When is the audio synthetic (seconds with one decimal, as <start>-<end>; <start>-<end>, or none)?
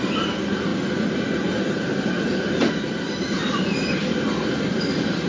0.0-0.7; 2.7-4.0; 4.7-5.3